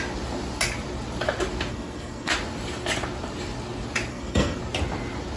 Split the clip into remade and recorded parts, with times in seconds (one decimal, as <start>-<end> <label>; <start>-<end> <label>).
0.0-1.7 recorded; 1.7-2.3 remade; 2.3-4.1 recorded; 4.1-4.6 remade; 4.6-5.4 recorded